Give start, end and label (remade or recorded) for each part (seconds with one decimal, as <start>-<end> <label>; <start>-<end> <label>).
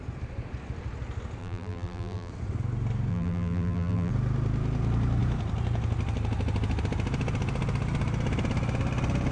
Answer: 0.0-1.4 recorded; 1.4-2.3 remade; 2.3-3.1 recorded; 3.1-4.1 remade; 4.1-9.3 recorded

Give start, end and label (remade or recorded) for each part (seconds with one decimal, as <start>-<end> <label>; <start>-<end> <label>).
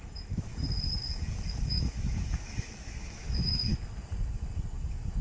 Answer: 0.0-0.5 remade; 0.5-1.6 recorded; 1.6-3.7 remade; 3.7-5.2 recorded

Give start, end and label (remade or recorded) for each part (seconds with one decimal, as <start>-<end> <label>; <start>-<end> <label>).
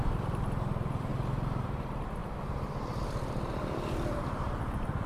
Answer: 0.0-1.1 remade; 1.1-1.6 recorded; 1.6-5.1 remade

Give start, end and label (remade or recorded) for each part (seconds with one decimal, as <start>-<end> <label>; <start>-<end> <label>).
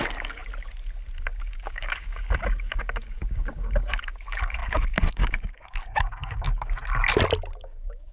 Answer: 0.0-0.4 remade; 0.4-1.4 recorded; 1.4-6.8 remade; 6.8-7.6 recorded; 7.6-8.1 remade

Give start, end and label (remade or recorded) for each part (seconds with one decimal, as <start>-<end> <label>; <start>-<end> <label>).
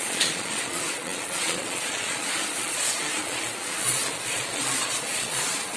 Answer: 0.0-5.8 remade